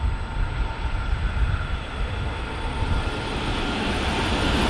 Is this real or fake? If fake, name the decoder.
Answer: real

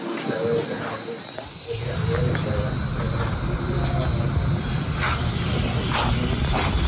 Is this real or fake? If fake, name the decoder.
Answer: real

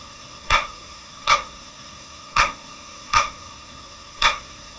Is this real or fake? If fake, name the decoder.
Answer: fake, codec, SNAC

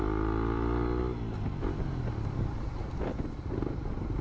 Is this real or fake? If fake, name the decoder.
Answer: real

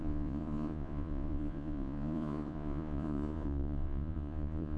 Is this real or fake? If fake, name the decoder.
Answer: fake, vocoder, Vocos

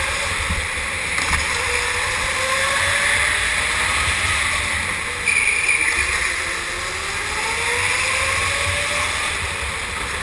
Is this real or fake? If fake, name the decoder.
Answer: real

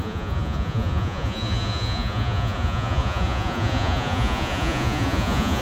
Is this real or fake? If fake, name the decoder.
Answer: fake, vocoder, Vocos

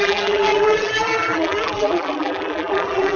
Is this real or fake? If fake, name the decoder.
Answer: fake, vocoder, BigVGAN v2